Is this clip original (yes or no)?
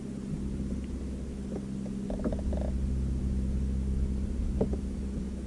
yes